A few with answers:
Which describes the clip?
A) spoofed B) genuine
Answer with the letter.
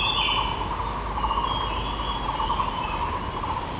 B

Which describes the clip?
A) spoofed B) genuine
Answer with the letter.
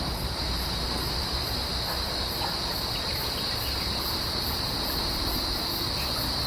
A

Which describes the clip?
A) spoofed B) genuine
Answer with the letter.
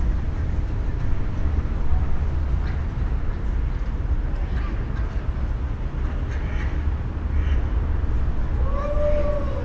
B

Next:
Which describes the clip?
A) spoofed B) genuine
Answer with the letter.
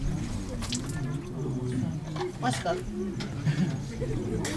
B